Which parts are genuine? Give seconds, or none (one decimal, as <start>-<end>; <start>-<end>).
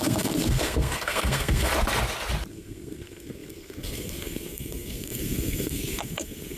1.7-2.5